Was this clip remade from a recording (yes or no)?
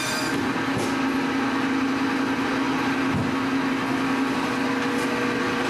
no